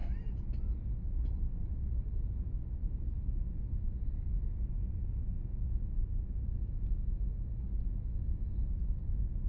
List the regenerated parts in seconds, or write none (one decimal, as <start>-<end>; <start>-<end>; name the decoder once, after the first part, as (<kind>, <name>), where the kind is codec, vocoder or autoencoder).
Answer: none